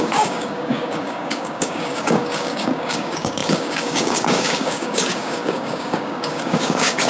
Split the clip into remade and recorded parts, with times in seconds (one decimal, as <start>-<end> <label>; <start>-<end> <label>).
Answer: 0.0-7.1 remade